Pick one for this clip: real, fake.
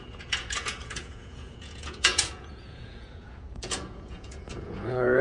fake